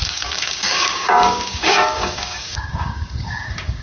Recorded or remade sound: remade